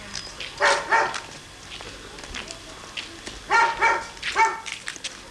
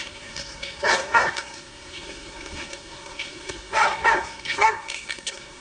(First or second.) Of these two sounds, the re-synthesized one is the second